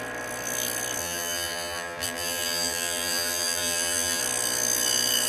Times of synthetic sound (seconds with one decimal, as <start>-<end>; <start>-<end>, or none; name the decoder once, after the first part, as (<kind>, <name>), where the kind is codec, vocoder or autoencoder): 1.0-4.2 (vocoder, BigVGAN v2)